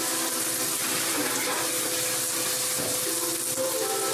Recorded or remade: recorded